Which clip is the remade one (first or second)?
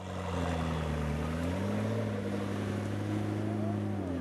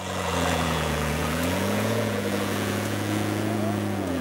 second